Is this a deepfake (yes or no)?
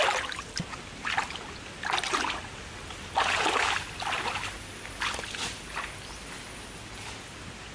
no